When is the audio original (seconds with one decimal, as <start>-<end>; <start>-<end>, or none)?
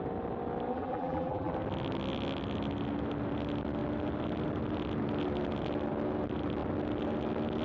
0.0-0.7; 1.5-7.6